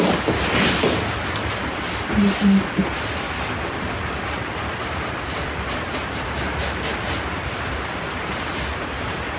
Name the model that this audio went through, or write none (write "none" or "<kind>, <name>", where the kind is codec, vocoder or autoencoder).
none